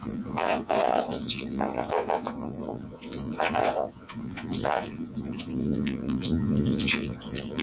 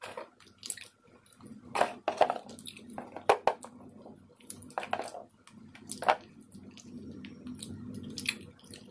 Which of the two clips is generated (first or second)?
first